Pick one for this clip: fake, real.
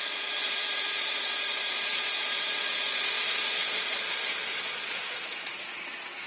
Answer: fake